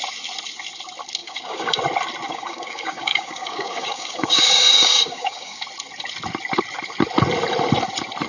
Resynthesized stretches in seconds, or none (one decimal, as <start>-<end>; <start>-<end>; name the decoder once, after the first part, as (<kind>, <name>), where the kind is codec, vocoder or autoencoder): 1.2-1.8 (codec, DAC); 2.3-5.6